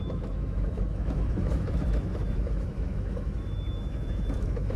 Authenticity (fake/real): fake